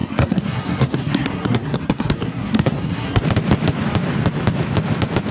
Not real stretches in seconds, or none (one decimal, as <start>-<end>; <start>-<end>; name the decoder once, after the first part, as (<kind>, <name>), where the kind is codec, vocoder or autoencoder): 0.0-3.2 (codec, SNAC)